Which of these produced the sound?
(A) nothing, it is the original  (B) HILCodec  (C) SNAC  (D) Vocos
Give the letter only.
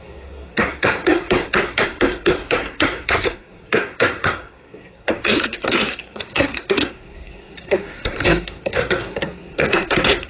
C